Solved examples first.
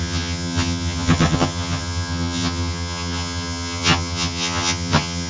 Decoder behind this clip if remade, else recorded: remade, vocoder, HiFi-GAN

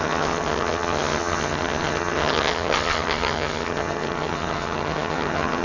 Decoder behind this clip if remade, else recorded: remade, vocoder, HiFi-GAN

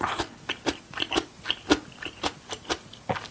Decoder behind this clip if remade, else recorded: recorded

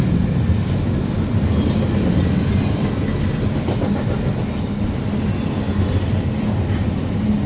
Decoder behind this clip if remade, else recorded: recorded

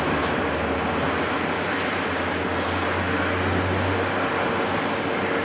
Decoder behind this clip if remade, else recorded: recorded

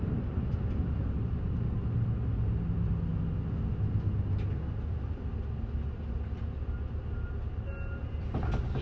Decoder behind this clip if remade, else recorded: recorded